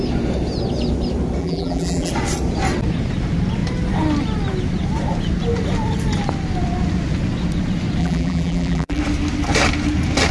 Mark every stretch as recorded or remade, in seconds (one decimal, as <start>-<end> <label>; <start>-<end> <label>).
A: 0.0-1.4 recorded; 1.4-2.1 remade; 2.1-8.0 recorded; 8.0-9.0 remade; 9.0-10.3 recorded